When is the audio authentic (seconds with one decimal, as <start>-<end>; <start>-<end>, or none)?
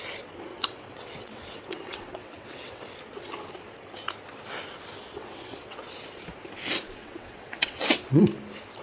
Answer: 0.0-0.5; 2.8-5.2; 5.8-7.0; 8.2-8.8